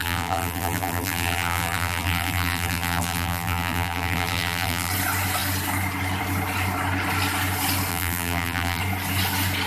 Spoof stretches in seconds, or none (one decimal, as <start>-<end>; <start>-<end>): 0.0-4.9; 7.9-8.8